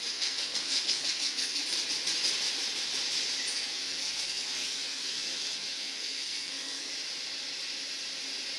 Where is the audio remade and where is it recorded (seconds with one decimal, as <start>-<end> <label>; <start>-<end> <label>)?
0.0-1.6 remade; 1.6-3.5 recorded; 3.5-6.9 remade; 6.9-8.6 recorded